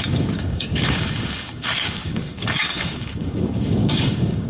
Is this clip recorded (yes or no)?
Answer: no